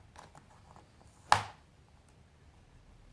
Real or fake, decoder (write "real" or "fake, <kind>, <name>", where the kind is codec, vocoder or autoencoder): real